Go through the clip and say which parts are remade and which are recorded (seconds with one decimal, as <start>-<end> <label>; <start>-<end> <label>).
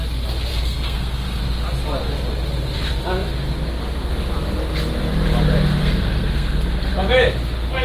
0.0-0.5 recorded; 0.5-1.4 remade; 1.4-5.8 recorded; 5.8-6.9 remade; 6.9-7.8 recorded